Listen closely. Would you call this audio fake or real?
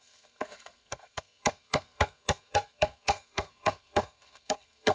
fake